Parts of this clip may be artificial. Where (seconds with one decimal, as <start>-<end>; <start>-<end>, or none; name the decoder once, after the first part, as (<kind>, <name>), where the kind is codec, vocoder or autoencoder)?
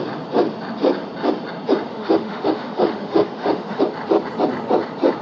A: 1.9-3.8 (autoencoder, DAC-VAE)